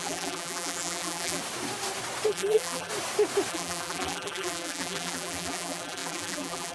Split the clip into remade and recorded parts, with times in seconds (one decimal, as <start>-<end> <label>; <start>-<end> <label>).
0.0-1.4 remade; 1.4-2.3 recorded; 2.3-2.9 remade; 2.9-3.5 recorded; 3.5-6.7 remade